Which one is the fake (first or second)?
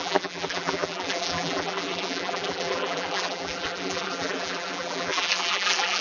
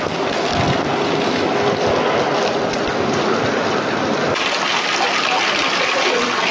first